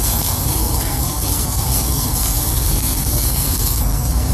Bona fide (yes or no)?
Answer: no